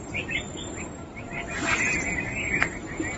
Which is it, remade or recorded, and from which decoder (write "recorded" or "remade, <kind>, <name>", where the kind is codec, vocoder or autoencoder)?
recorded